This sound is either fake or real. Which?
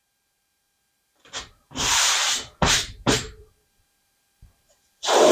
fake